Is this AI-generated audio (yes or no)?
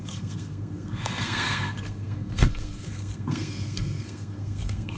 yes